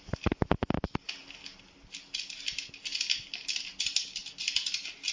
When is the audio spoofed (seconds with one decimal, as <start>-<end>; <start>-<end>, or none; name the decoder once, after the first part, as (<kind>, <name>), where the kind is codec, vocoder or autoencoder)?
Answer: none